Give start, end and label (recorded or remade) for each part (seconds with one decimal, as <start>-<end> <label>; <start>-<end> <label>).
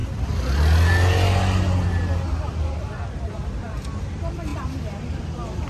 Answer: 0.0-3.3 recorded; 3.3-4.5 remade; 4.5-5.2 recorded; 5.2-5.7 remade